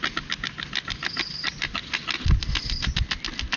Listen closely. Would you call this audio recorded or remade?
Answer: recorded